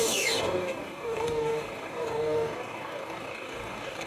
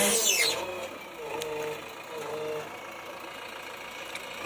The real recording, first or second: second